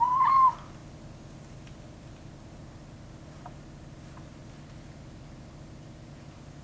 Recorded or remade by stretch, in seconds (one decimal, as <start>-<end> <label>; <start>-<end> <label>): 0.0-6.6 recorded